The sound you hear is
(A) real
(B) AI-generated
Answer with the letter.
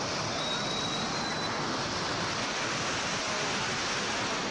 A